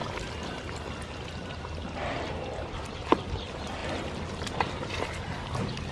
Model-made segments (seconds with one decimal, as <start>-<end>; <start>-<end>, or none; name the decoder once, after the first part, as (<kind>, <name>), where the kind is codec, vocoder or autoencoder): none